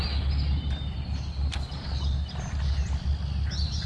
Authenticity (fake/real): real